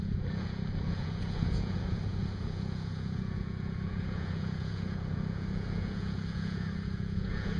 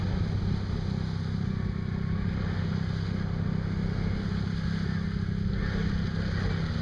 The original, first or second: second